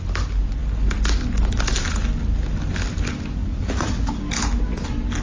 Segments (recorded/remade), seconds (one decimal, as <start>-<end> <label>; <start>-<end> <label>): 0.0-3.4 recorded; 3.4-4.1 remade; 4.1-5.2 recorded